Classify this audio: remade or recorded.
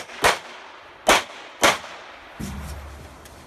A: recorded